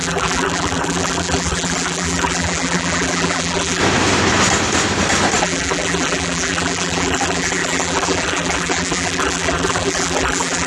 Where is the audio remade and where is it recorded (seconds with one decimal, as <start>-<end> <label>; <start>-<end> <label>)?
0.0-3.8 remade; 3.8-5.4 recorded; 5.4-10.7 remade